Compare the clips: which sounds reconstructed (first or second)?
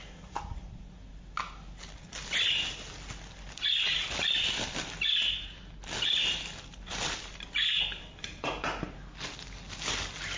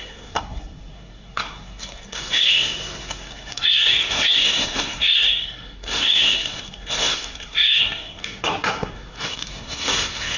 second